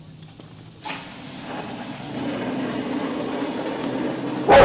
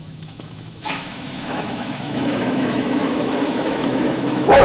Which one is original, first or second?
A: first